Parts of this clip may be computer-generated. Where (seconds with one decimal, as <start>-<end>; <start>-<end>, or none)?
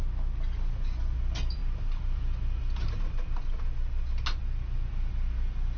none